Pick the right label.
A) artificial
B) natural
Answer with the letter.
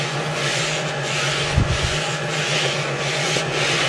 A